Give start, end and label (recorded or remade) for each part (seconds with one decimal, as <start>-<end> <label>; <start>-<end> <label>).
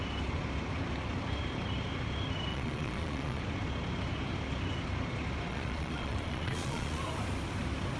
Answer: 0.0-2.5 recorded; 2.5-3.4 remade; 3.4-5.5 recorded; 5.5-7.0 remade; 7.0-8.0 recorded